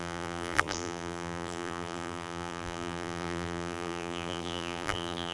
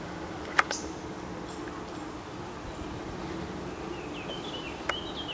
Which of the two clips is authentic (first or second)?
second